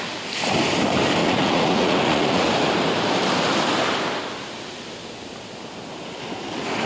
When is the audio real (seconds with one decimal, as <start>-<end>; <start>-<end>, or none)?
0.0-1.2; 2.5-6.9